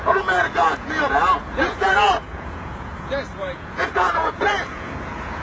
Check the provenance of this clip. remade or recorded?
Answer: remade